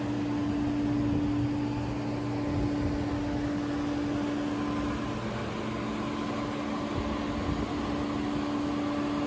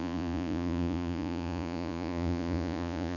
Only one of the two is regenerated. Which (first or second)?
second